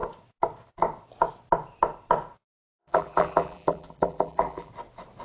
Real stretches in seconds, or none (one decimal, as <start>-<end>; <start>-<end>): 0.0-2.8; 4.7-5.2